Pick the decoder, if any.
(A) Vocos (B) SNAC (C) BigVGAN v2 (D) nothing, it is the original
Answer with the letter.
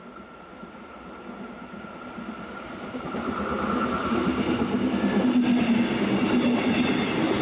D